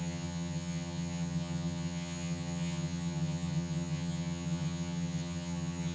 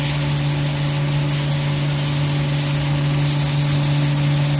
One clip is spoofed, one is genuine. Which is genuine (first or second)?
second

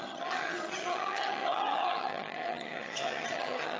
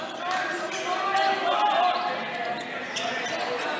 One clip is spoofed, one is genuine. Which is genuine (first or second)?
second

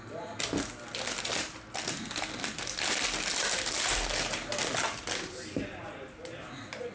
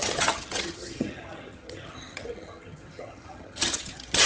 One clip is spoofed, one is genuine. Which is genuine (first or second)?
first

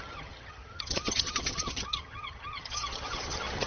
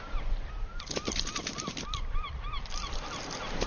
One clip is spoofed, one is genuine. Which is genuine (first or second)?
second